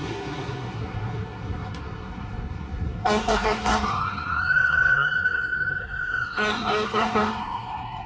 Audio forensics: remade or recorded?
remade